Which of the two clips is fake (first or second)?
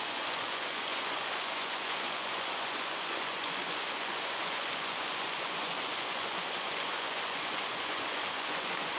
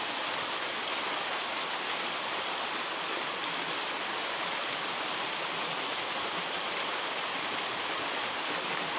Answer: first